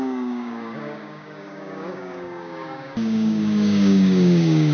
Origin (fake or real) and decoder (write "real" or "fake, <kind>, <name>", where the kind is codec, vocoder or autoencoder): fake, codec, DAC